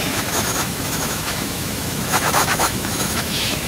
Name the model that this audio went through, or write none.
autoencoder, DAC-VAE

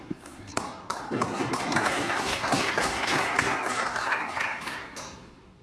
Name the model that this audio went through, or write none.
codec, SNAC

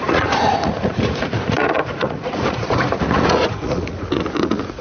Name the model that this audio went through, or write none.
vocoder, Vocos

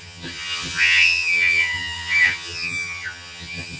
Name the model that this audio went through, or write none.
vocoder, HiFi-GAN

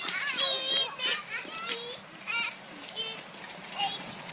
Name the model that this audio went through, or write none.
vocoder, BigVGAN v2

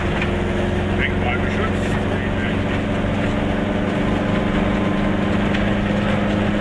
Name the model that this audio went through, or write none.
none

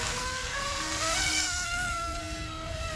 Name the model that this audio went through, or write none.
codec, SNAC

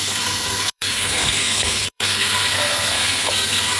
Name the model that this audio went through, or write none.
codec, SNAC